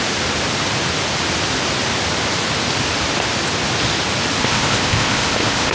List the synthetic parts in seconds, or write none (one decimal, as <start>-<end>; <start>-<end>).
4.4-5.7